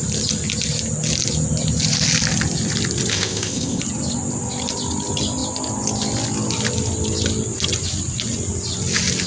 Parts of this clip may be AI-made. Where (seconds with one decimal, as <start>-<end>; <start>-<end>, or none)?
3.1-3.8